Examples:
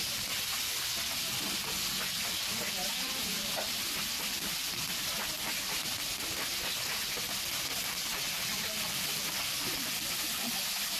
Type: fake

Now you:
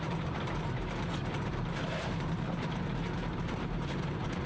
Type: fake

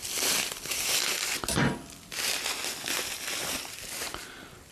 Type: real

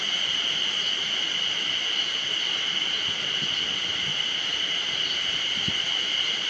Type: real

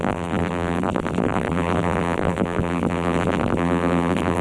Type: fake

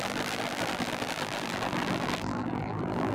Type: fake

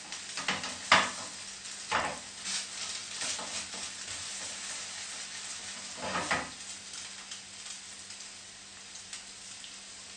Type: real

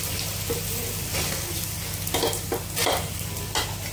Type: real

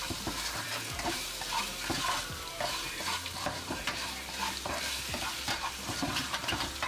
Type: fake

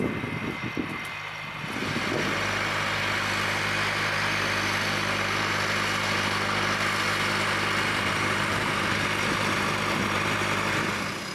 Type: real